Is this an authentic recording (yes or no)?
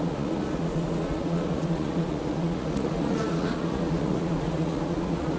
no